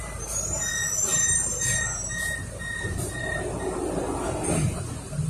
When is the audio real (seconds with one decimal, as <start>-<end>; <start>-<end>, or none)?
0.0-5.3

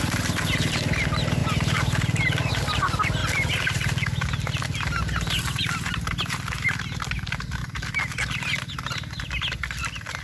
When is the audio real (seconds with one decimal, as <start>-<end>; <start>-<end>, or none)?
0.0-10.2

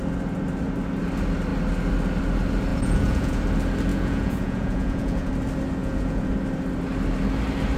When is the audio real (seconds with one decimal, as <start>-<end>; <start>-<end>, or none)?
0.0-2.7; 3.4-3.9; 5.3-5.8; 6.3-7.8

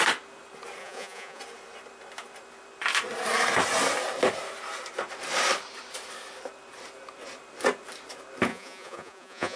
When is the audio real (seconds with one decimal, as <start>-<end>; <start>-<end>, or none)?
0.0-0.8; 1.4-8.5

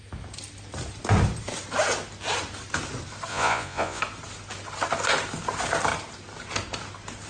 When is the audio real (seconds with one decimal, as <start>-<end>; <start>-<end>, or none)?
0.0-3.3; 4.0-7.3

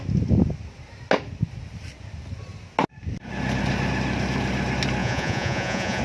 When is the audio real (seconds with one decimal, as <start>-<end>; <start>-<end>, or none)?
0.0-5.0

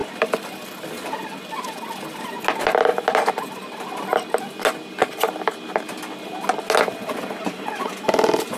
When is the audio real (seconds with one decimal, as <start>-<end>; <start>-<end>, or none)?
0.0-8.6